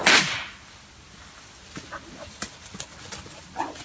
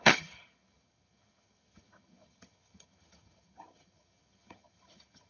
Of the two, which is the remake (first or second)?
second